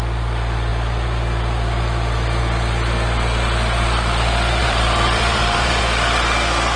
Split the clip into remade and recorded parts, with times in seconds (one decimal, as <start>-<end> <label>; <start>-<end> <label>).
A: 0.0-4.6 recorded; 4.6-5.8 remade; 5.8-6.8 recorded